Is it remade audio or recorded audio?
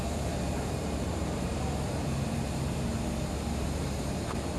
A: remade